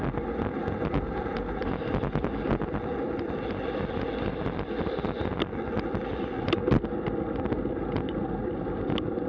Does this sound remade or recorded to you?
recorded